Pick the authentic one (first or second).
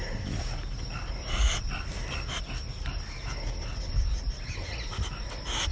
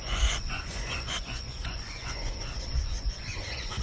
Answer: first